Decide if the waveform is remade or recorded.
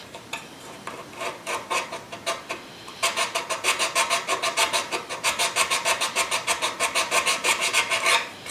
remade